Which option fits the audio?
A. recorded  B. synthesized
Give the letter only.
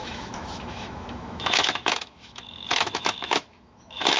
B